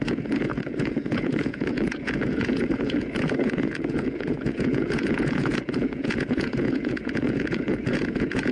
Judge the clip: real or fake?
fake